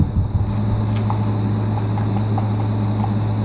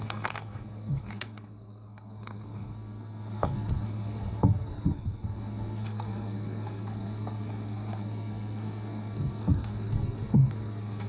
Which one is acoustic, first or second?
first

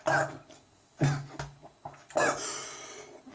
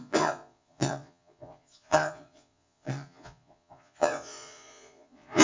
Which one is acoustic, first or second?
first